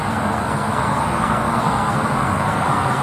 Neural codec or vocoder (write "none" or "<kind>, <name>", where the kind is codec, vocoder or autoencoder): codec, SNAC